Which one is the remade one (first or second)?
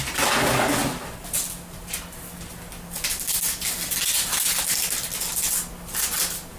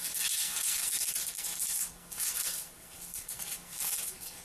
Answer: second